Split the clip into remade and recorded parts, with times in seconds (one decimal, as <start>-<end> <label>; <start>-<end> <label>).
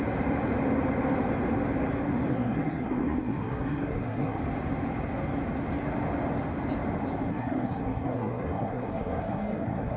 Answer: 0.0-2.3 recorded; 2.3-4.4 remade; 4.4-7.3 recorded; 7.3-10.0 remade